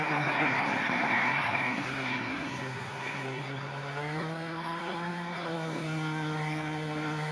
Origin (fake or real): fake